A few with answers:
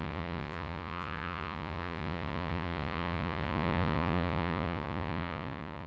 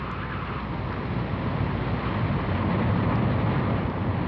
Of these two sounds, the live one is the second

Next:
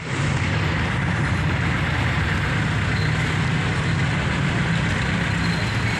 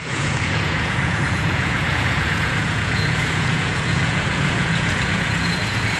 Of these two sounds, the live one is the first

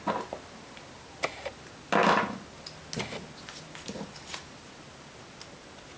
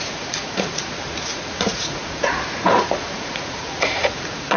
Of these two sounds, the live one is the first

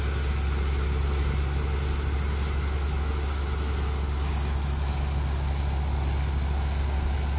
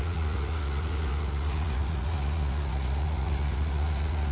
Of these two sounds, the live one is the first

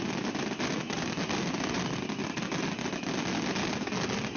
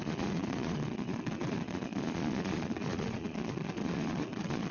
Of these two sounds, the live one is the first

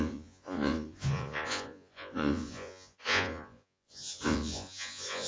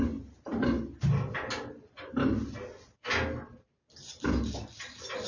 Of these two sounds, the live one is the second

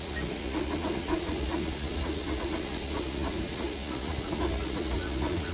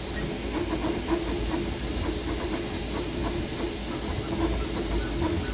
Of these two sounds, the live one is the second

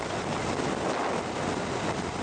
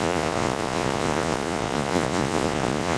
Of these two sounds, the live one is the first